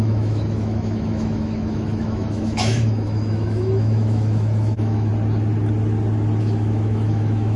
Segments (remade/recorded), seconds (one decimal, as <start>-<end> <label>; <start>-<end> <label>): 0.0-5.1 remade; 5.1-6.4 recorded; 6.4-7.6 remade